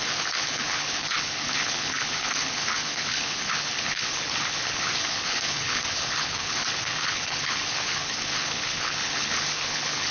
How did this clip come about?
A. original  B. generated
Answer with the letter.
B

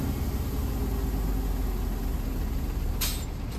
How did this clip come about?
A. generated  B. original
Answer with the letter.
B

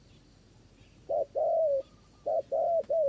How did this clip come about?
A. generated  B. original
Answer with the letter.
B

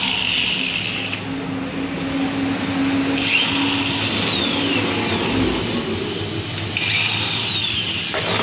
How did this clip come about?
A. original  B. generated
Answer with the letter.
A